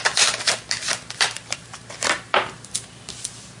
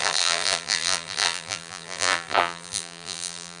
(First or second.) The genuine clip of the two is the first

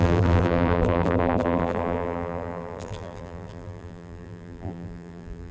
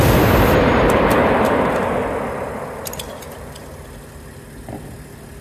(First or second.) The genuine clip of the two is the second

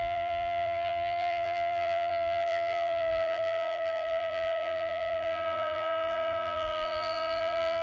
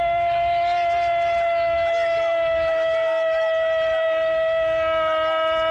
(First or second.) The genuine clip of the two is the second